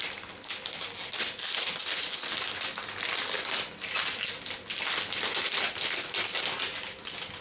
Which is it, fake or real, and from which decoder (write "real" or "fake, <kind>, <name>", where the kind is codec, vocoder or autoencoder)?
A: real